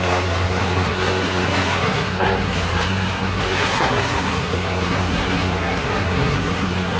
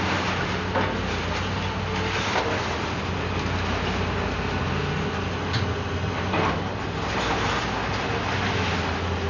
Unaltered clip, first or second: second